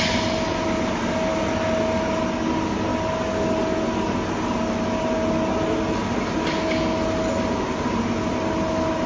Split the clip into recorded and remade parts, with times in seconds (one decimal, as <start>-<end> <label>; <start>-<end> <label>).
0.0-9.1 recorded

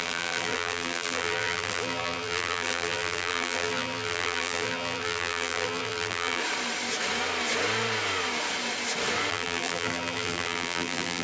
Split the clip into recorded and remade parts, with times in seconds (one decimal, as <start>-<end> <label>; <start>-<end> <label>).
0.0-6.4 remade; 6.4-9.3 recorded; 9.3-11.2 remade

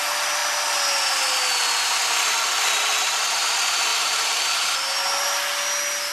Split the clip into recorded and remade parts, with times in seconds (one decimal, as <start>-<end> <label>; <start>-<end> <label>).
0.0-3.9 recorded; 3.9-4.4 remade; 4.4-6.1 recorded

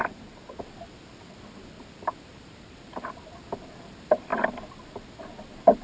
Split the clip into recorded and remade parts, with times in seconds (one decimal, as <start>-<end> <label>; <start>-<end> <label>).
0.0-0.6 remade; 0.6-2.3 recorded; 2.3-3.1 remade; 3.1-5.8 recorded

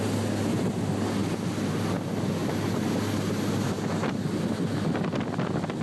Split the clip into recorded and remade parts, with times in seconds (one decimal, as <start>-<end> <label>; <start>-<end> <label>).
0.0-5.8 recorded

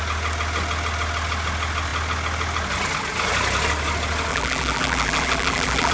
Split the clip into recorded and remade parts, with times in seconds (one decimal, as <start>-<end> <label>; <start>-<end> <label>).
0.0-4.3 recorded; 4.3-5.9 remade